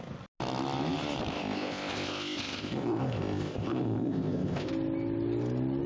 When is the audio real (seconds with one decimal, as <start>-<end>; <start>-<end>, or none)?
0.0-1.3; 4.7-5.9